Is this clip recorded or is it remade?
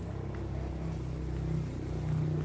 recorded